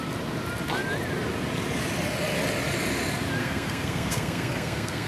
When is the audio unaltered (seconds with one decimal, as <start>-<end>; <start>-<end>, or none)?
0.0-3.4